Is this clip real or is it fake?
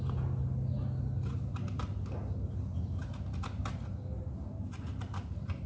real